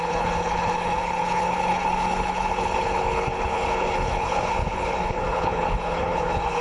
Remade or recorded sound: remade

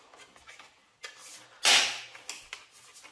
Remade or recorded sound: recorded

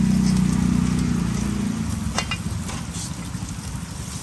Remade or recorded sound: recorded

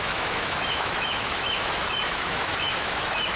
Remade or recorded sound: remade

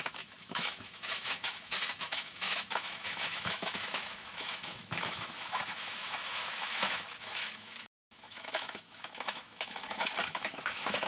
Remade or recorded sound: remade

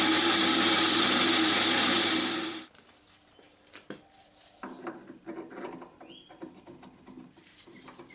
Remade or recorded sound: recorded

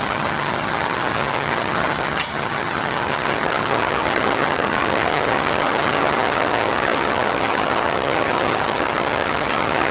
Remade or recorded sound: remade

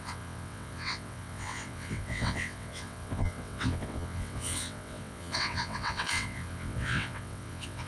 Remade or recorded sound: remade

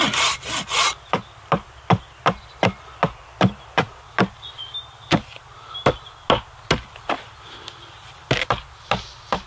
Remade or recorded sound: recorded